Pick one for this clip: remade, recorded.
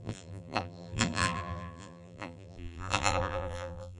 remade